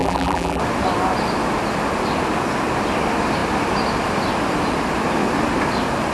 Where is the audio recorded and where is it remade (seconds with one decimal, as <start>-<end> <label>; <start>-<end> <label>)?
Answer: 0.0-0.6 remade; 0.6-6.1 recorded